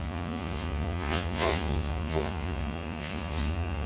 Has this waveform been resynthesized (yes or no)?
yes